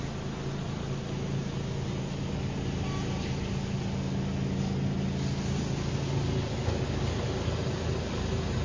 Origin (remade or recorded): recorded